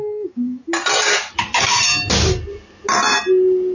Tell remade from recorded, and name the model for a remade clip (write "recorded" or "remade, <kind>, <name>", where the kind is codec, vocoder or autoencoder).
recorded